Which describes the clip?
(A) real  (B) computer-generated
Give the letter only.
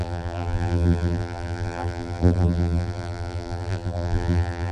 B